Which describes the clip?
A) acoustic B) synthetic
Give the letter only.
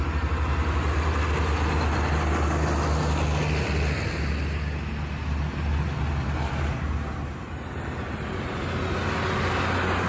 A